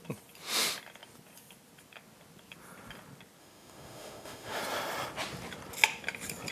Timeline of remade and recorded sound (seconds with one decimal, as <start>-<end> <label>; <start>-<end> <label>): 0.0-3.4 recorded; 3.4-4.6 remade; 4.6-6.5 recorded